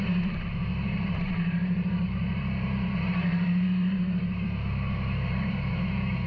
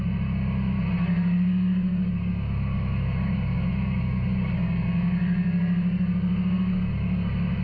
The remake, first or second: first